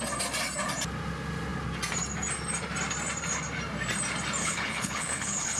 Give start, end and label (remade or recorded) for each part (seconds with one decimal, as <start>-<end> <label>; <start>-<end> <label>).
0.0-4.4 recorded; 4.4-5.6 remade